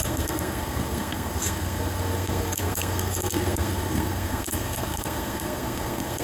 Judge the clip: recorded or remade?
remade